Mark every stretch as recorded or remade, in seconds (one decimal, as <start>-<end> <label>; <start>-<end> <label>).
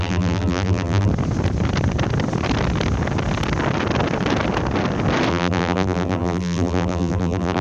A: 0.0-1.1 remade; 1.1-5.3 recorded; 5.3-7.6 remade